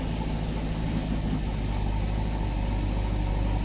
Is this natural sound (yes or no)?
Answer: yes